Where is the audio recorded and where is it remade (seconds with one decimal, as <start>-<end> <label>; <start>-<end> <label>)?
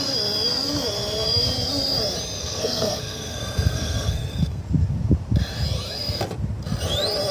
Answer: 0.0-2.4 recorded; 2.4-4.6 remade; 4.6-7.3 recorded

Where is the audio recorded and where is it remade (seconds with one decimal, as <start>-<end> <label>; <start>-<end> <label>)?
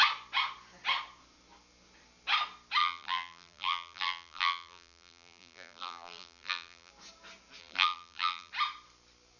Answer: 0.0-2.8 recorded; 2.8-6.9 remade; 6.9-7.6 recorded; 7.6-8.5 remade; 8.5-9.4 recorded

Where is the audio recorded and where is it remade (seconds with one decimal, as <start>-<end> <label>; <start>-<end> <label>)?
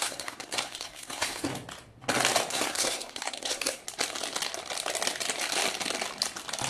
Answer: 0.0-1.5 remade; 1.5-2.5 recorded; 2.5-3.8 remade; 3.8-6.7 recorded